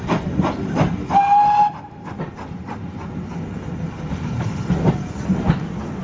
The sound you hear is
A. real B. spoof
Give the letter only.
A